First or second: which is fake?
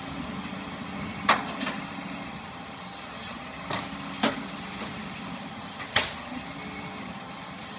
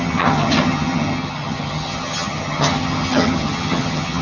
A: second